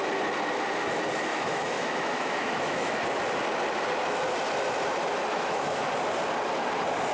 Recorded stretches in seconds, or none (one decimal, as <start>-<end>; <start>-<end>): 0.0-1.3; 3.0-5.3; 5.9-7.1